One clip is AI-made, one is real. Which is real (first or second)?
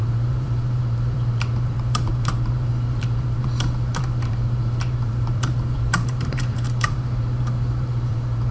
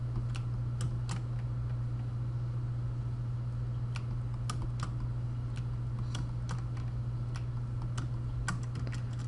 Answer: second